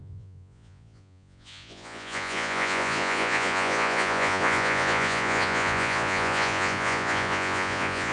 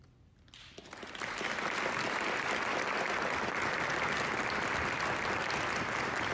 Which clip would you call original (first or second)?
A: second